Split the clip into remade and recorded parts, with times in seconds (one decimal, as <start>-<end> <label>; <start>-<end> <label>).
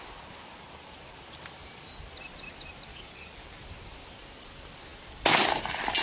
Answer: 0.0-2.9 recorded; 2.9-3.6 remade; 3.6-6.0 recorded